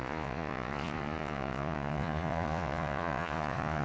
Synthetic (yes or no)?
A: yes